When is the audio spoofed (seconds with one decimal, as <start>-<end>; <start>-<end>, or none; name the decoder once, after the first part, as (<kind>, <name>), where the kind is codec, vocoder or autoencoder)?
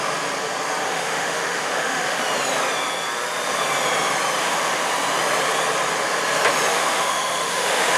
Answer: 0.9-2.2 (autoencoder, DAC-VAE); 4.4-4.9; 6.7-8.0